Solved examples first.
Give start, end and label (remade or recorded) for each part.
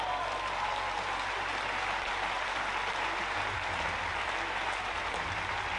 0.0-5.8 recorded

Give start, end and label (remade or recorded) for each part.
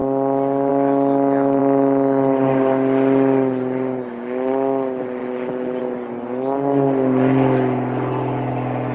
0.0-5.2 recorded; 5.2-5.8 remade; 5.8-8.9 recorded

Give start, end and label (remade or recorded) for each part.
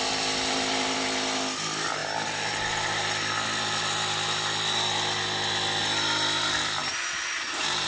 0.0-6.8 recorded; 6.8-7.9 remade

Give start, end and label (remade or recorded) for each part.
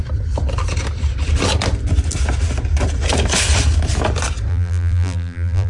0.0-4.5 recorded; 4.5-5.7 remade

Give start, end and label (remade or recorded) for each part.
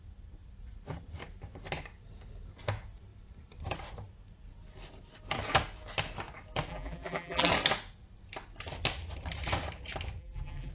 0.0-6.7 recorded; 6.7-7.5 remade; 7.5-10.2 recorded; 10.2-10.7 remade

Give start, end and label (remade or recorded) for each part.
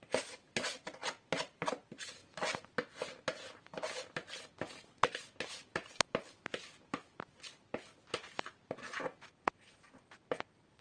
0.0-2.2 remade; 2.2-5.4 recorded; 5.4-6.2 remade; 6.2-9.5 recorded; 9.5-10.8 remade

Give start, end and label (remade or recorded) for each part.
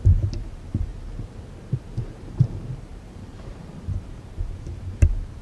0.0-0.9 remade; 0.9-1.6 recorded; 1.6-5.4 remade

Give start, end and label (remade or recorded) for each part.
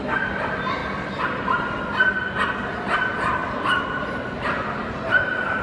0.0-5.6 recorded